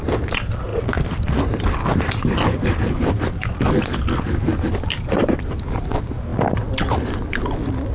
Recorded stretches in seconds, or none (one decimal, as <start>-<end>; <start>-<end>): 0.0-7.9